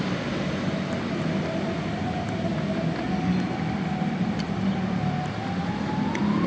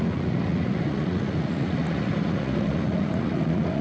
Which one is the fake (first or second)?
second